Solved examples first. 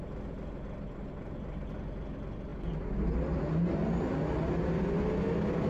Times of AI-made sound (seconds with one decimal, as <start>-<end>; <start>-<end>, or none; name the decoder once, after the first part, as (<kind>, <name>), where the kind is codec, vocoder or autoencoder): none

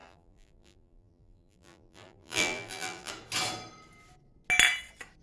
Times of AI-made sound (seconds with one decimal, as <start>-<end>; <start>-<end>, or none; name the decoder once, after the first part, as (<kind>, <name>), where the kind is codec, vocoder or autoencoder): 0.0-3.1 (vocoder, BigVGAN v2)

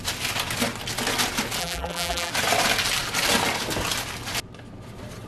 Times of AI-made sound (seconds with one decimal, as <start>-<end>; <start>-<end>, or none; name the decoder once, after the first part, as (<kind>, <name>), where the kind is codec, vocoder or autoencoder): 1.6-2.3 (vocoder, BigVGAN v2)

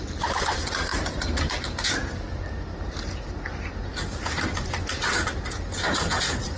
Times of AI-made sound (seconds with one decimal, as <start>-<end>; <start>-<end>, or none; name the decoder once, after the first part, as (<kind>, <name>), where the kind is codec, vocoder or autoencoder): 0.9-1.5 (vocoder, BigVGAN v2)